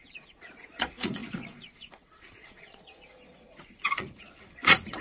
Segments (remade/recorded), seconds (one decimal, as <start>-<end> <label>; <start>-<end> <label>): 0.0-5.0 remade